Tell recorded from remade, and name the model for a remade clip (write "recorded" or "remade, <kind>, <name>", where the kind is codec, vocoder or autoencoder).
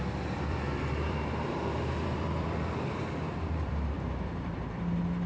remade, vocoder, BigVGAN v2